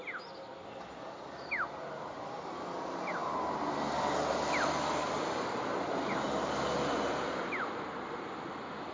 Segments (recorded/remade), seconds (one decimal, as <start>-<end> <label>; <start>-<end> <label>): 0.0-3.2 recorded; 3.2-7.4 remade; 7.4-8.9 recorded